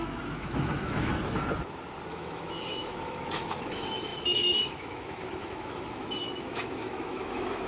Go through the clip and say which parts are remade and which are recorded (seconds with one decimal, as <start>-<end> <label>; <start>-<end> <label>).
0.0-1.1 remade; 1.1-2.1 recorded; 2.1-7.7 remade

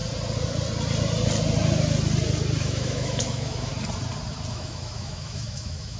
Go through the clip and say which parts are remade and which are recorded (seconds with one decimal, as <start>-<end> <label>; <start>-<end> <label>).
0.0-2.6 recorded; 2.6-3.7 remade; 3.7-4.5 recorded; 4.5-6.0 remade

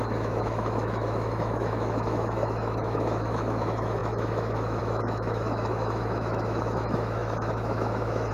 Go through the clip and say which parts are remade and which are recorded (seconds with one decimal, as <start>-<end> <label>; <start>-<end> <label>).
0.0-8.3 remade

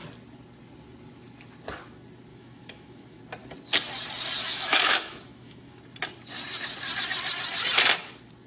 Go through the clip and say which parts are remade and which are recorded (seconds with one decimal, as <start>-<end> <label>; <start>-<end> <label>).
0.0-2.3 recorded; 2.3-3.2 remade; 3.2-4.4 recorded; 4.4-5.8 remade; 5.8-8.5 recorded

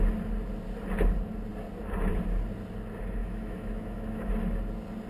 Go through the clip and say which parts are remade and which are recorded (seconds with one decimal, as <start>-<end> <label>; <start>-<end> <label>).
0.0-3.2 recorded; 3.2-4.3 remade; 4.3-5.1 recorded

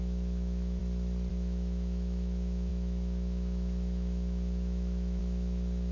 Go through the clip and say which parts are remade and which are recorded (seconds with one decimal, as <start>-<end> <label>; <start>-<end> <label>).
0.0-0.8 remade; 0.8-1.3 recorded; 1.3-5.9 remade